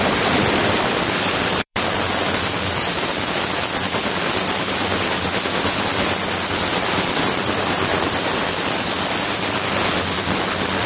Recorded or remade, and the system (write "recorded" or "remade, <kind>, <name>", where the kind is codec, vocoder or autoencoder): remade, vocoder, BigVGAN v2